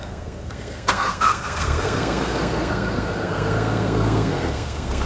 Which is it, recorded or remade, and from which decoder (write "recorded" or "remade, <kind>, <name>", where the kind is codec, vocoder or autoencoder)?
remade, codec, SNAC